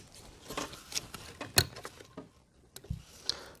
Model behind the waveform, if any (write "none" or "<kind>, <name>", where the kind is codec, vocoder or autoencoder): none